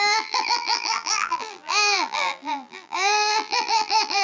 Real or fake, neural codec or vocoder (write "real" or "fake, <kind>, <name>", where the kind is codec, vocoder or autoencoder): fake, vocoder, BigVGAN v2